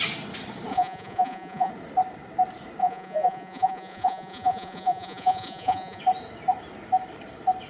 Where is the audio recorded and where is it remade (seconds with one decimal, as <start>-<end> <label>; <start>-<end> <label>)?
0.0-0.7 recorded; 0.7-1.7 remade; 1.7-2.8 recorded; 2.8-6.0 remade; 6.0-7.7 recorded